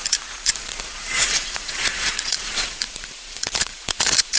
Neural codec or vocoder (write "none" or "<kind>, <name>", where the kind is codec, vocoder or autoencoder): vocoder, Vocos